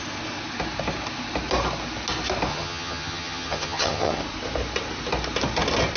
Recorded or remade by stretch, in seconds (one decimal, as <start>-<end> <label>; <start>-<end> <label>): 0.0-2.5 recorded; 2.5-4.2 remade; 4.2-6.0 recorded